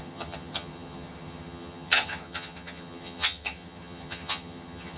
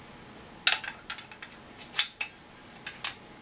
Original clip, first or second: second